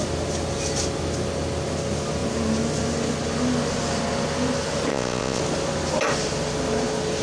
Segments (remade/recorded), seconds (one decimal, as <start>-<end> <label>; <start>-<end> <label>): 0.0-4.9 recorded; 4.9-5.4 remade; 5.4-7.2 recorded